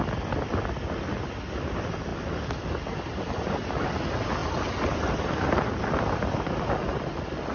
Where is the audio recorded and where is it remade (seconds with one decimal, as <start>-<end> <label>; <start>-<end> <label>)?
0.0-4.4 recorded; 4.4-6.1 remade; 6.1-7.5 recorded